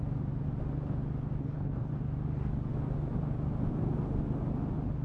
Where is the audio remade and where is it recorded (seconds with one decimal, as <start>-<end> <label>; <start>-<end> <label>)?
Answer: 0.0-1.4 recorded; 1.4-1.9 remade; 1.9-5.0 recorded